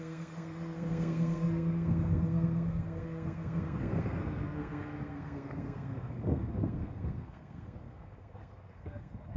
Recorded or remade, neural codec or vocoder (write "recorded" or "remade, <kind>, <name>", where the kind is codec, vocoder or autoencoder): remade, codec, SNAC